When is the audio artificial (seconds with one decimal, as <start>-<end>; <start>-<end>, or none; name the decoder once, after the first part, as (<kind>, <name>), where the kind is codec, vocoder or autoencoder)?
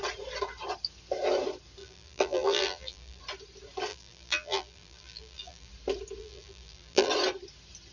1.8-3.2 (vocoder, BigVGAN v2); 3.9-5.7; 6.2-7.1